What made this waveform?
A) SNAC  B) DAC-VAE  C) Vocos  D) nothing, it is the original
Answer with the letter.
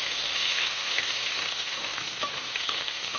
B